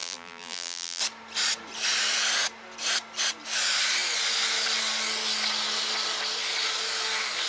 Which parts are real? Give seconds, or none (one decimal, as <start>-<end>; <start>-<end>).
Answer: 1.0-7.5